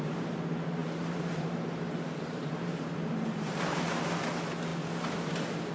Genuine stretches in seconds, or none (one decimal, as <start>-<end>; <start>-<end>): 0.0-0.8; 4.2-5.7